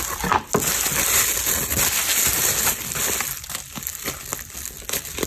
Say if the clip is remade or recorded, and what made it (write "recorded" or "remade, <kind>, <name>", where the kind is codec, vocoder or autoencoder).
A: recorded